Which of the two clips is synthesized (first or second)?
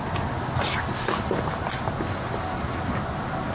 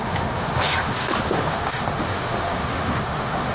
second